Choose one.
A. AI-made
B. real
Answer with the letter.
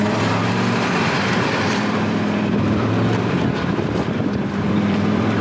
A